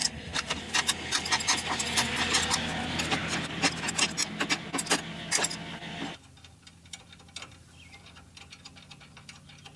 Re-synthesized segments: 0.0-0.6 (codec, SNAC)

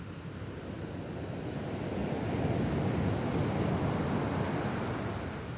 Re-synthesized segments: none

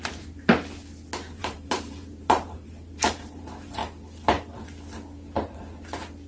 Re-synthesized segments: 0.0-0.5 (vocoder, BigVGAN v2); 1.4-3.8

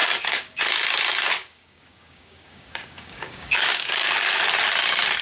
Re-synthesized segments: 0.0-0.6 (codec, DAC); 1.3-4.4

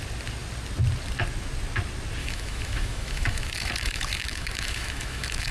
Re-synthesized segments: 2.2-5.5 (autoencoder, DAC-VAE)

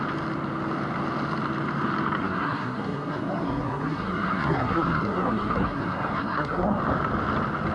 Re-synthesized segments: 2.2-6.8 (codec, SNAC)

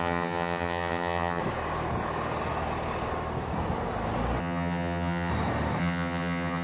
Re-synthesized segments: 0.0-1.4 (vocoder, HiFi-GAN); 4.4-5.3; 5.8-6.6